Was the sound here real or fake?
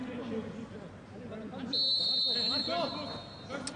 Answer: real